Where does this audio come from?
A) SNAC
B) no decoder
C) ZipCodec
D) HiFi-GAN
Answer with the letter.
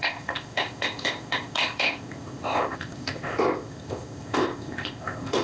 C